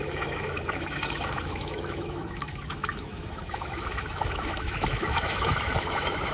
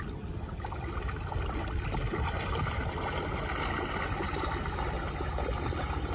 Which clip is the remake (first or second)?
first